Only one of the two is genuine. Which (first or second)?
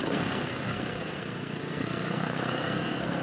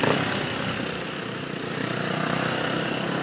second